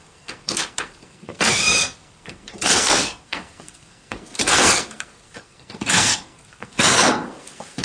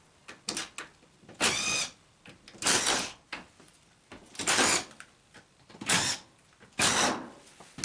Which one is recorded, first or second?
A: second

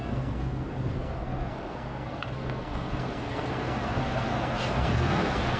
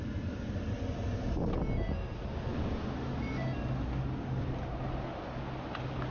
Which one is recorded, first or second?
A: second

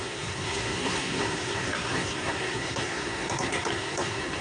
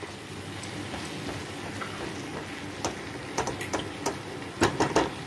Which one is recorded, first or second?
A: second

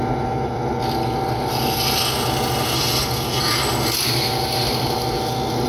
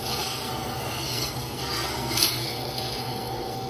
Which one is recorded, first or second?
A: first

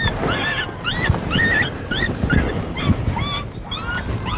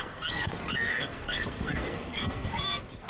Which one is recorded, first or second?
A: first